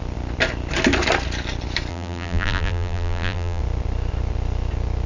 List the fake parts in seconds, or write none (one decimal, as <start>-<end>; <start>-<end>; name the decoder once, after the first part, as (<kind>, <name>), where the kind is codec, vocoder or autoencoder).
1.9-3.6 (vocoder, BigVGAN v2)